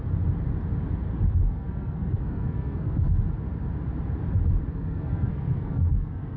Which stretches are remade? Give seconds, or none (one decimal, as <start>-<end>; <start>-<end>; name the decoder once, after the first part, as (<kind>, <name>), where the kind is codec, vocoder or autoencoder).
1.4-3.2 (codec, SNAC); 4.7-6.4